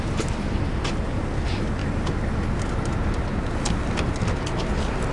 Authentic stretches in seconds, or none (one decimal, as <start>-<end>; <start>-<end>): 0.0-5.1